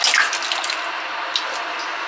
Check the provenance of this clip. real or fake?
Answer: real